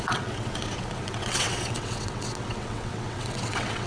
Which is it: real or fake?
fake